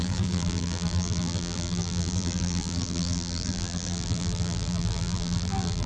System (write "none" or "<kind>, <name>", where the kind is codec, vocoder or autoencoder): vocoder, BigVGAN v2